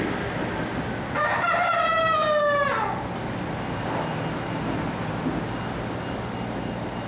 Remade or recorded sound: recorded